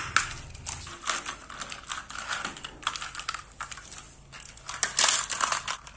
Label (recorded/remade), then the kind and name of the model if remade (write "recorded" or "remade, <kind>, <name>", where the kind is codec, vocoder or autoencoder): recorded